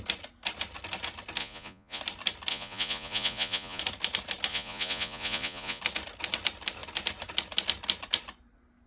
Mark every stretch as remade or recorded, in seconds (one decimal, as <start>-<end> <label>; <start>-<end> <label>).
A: 0.0-1.4 recorded; 1.4-2.0 remade; 2.0-2.5 recorded; 2.5-3.8 remade; 3.8-4.5 recorded; 4.5-5.8 remade; 5.8-8.9 recorded